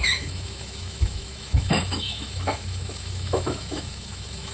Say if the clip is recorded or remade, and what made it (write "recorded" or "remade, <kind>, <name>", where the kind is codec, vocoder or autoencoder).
remade, autoencoder, DAC-VAE